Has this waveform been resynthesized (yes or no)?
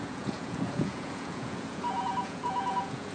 yes